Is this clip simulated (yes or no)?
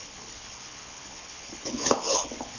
yes